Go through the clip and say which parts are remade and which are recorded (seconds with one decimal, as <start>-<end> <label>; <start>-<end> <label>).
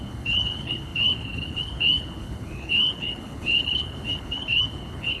0.0-5.2 remade